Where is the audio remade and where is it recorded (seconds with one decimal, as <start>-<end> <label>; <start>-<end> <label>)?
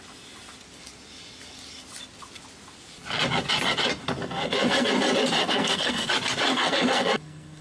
0.0-4.2 recorded; 4.2-4.9 remade; 4.9-5.4 recorded; 5.4-6.1 remade; 6.1-6.5 recorded; 6.5-7.6 remade